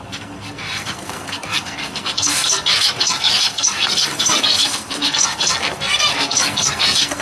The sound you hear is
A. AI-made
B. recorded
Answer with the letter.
A